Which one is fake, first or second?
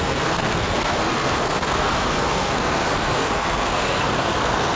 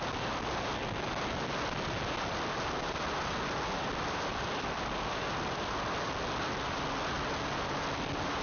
first